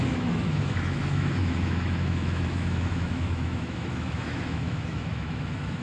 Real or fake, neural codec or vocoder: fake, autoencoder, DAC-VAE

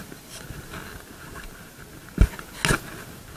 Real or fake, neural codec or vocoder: real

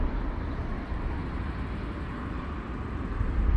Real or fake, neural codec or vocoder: real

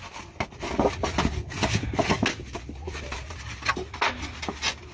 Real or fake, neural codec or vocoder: real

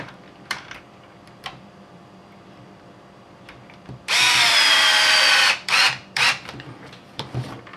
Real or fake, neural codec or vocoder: fake, vocoder, BigVGAN v2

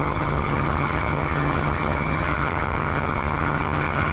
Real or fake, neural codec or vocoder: fake, vocoder, HiFi-GAN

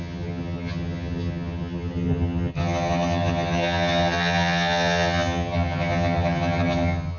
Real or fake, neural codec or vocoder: fake, vocoder, HiFi-GAN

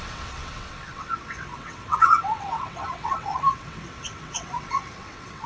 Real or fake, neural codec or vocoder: fake, vocoder, WaveNeXt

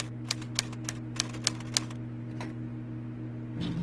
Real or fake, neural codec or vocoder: real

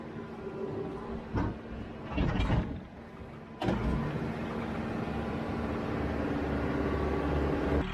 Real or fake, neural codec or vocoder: real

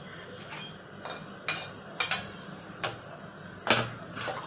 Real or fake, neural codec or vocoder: real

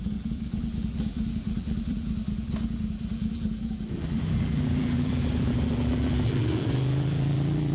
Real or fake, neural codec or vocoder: fake, vocoder, BigVGAN v2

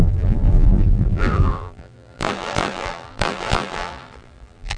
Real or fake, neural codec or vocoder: fake, vocoder, BigVGAN v2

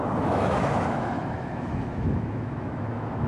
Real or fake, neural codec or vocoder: fake, autoencoder, DAC-VAE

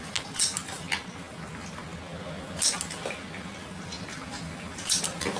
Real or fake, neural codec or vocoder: real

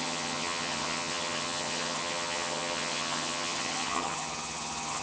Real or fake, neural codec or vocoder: fake, vocoder, HiFi-GAN